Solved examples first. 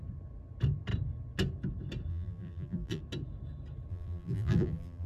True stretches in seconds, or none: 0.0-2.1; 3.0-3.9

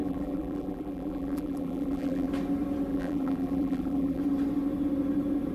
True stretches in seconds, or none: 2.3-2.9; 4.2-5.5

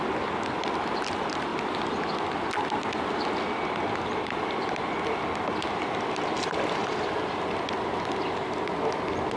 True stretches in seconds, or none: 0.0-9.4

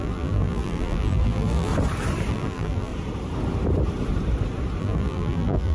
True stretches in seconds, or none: 1.7-2.3; 2.9-4.8